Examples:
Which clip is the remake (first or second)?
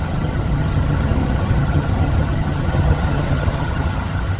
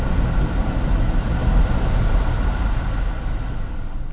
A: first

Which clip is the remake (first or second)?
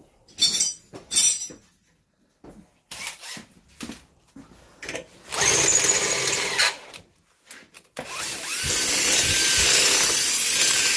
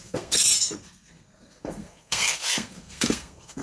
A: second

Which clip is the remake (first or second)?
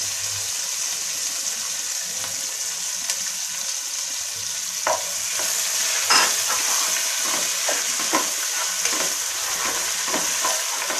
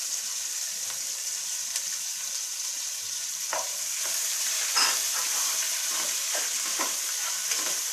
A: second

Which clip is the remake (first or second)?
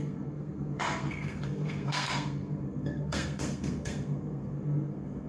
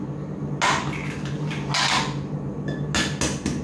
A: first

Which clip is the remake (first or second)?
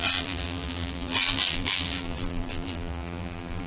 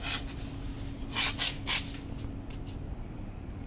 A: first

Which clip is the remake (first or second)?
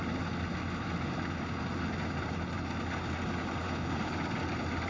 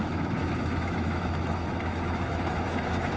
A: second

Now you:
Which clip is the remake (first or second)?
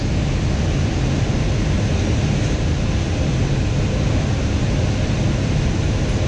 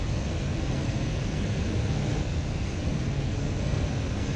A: second